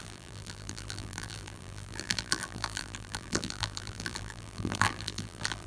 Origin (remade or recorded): remade